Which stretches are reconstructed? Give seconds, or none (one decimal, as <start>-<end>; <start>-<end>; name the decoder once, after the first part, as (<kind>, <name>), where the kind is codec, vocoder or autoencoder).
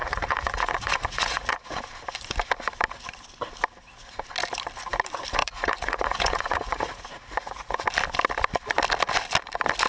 0.0-1.8 (vocoder, Vocos); 5.4-7.8